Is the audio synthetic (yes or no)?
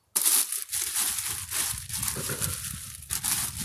no